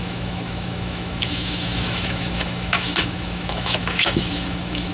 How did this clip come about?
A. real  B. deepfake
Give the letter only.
B